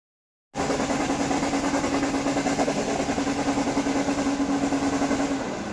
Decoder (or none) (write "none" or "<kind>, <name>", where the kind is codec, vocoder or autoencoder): none